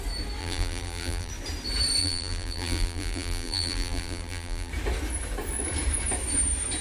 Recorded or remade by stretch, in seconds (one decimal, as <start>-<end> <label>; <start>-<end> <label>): 0.0-0.4 recorded; 0.4-1.3 remade; 1.3-2.0 recorded; 2.0-4.7 remade; 4.7-6.8 recorded